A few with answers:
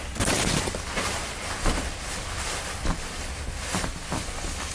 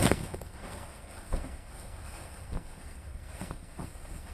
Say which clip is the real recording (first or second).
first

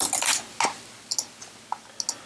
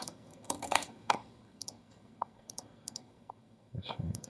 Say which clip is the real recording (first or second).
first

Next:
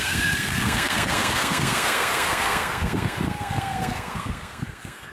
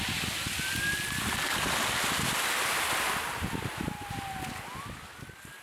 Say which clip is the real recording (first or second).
second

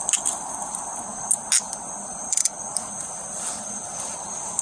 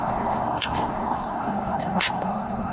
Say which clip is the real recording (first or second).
first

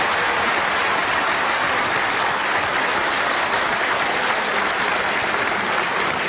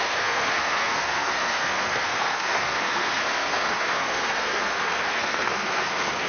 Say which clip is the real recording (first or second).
first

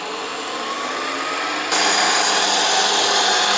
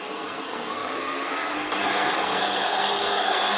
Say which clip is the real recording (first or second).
first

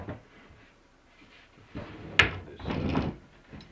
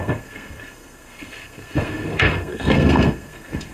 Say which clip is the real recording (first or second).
first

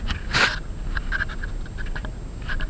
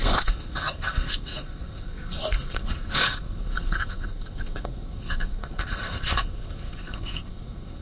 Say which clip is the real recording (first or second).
first